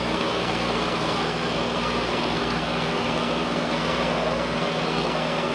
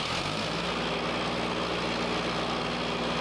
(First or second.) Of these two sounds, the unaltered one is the second